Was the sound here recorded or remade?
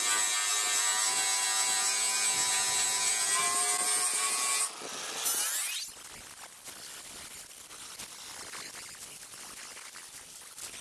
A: recorded